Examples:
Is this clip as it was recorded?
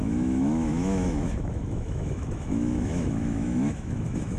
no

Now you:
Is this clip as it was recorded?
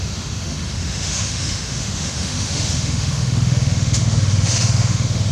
no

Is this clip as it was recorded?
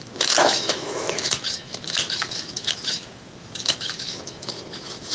no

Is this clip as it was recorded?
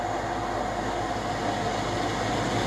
yes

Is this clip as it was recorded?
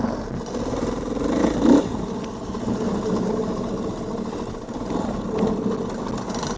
yes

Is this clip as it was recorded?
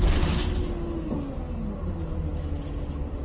yes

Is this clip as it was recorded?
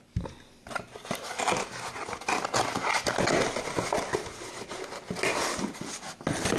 yes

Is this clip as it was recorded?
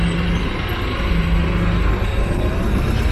yes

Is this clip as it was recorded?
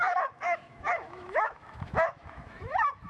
no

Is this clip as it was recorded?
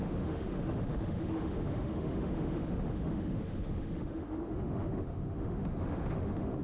no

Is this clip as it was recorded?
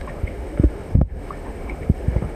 no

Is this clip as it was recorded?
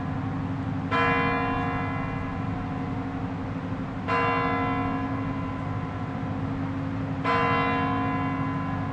yes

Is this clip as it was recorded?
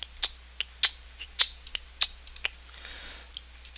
yes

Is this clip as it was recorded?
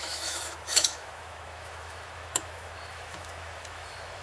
no